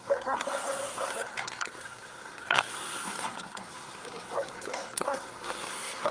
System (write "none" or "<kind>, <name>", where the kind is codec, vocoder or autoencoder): codec, SNAC